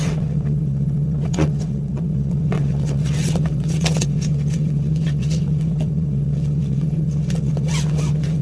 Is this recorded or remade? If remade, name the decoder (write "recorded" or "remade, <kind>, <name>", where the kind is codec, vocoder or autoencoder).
remade, vocoder, WaveNeXt